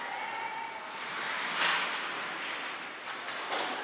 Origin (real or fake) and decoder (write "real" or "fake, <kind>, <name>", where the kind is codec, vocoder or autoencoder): real